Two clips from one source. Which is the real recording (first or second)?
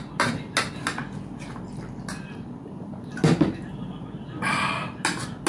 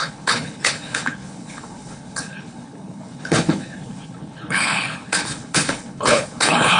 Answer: first